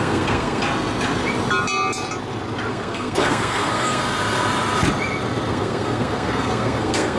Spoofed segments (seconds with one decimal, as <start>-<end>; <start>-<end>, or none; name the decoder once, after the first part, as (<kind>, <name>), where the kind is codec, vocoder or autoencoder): 0.0-0.6 (codec, SNAC); 2.7-4.0; 5.5-7.2